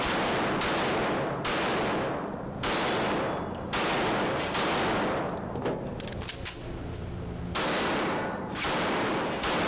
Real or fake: real